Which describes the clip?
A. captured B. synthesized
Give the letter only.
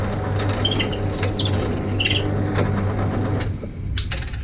A